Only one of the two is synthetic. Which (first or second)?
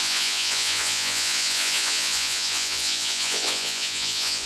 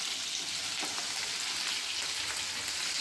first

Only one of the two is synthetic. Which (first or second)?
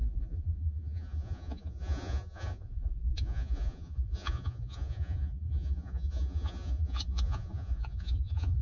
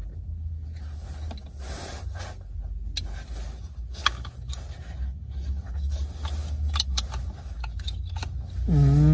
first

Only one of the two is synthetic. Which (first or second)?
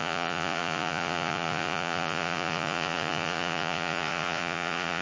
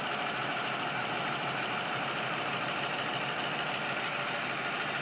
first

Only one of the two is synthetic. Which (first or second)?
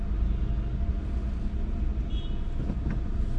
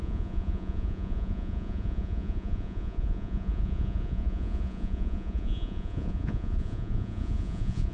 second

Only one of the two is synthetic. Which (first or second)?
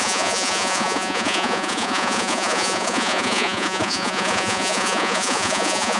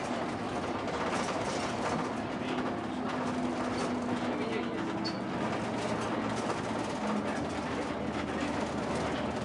first